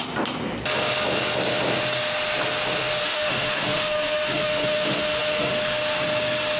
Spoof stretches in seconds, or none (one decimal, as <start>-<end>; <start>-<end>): 3.0-5.5

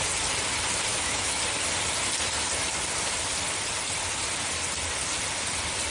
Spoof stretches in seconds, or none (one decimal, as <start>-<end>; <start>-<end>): 0.9-1.4

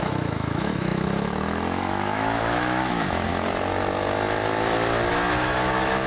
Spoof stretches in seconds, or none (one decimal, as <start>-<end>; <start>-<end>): 0.0-3.3; 5.1-6.1

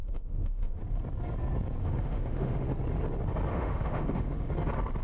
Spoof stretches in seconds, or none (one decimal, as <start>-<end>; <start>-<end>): 0.0-0.8; 1.8-2.7; 3.5-4.5

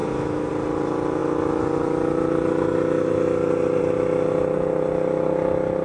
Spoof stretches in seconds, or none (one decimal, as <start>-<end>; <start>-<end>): 0.0-0.5

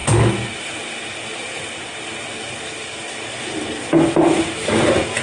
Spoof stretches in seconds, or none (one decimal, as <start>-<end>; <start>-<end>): none

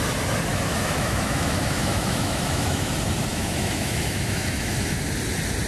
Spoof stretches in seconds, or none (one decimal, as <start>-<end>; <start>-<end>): 0.5-2.9; 3.3-5.0

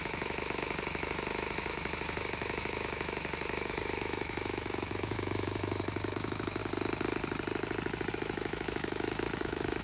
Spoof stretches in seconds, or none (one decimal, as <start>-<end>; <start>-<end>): 0.0-6.6; 8.1-9.8